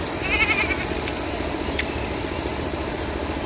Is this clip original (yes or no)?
yes